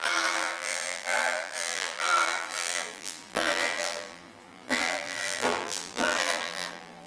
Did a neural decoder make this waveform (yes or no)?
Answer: yes